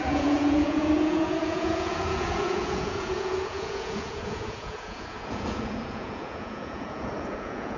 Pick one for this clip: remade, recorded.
remade